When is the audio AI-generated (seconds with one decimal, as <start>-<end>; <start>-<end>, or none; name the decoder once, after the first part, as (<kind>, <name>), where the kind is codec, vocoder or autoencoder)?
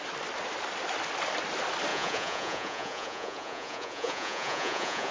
1.9-5.1 (vocoder, Vocos)